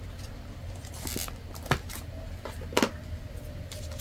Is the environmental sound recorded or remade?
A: recorded